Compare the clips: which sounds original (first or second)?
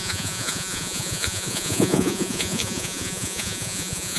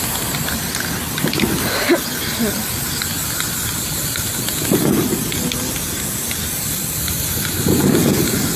second